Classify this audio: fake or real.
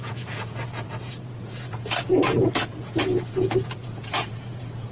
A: fake